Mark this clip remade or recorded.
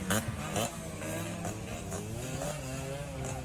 recorded